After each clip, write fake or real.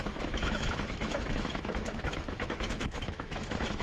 fake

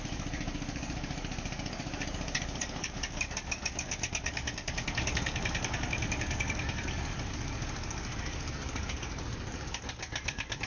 fake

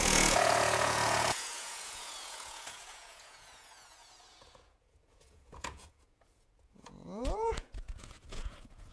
fake